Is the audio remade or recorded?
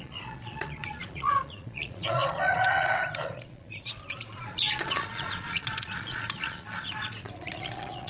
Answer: remade